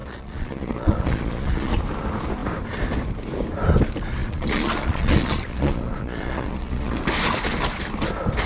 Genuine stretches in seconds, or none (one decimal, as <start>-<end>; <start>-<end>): 1.7-4.2; 7.0-8.5

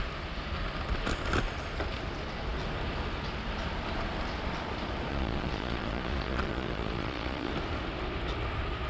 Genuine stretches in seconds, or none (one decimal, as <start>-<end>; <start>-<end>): 0.0-5.1; 7.5-8.9

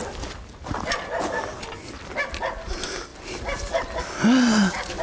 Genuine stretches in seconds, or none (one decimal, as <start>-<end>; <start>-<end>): 0.0-5.0

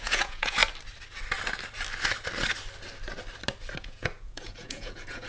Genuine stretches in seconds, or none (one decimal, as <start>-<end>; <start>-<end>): 0.6-3.8

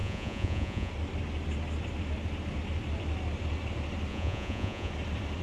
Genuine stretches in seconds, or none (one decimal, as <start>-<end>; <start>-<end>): 0.9-4.1; 4.9-5.4